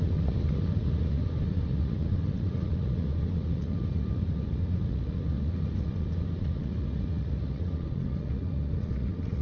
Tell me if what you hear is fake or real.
fake